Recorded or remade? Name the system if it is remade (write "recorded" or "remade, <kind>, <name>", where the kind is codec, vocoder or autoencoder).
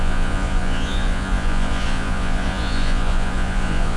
remade, vocoder, Vocos